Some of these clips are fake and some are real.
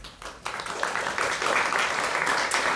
real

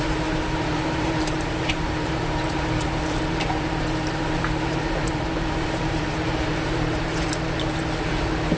fake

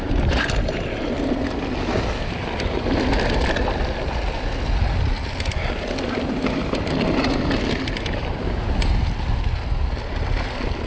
real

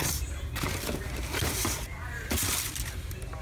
real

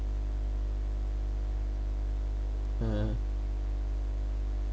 real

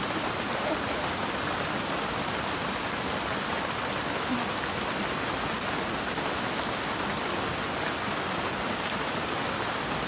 real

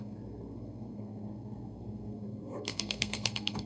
fake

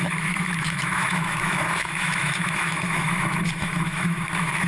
fake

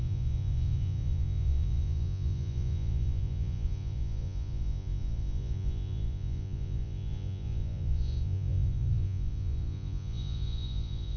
fake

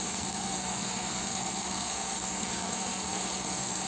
fake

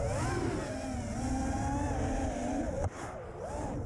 real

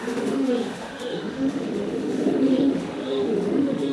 fake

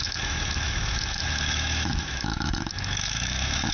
fake